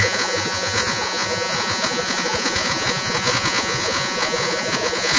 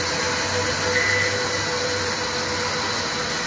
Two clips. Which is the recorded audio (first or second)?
second